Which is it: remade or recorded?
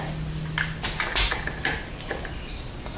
recorded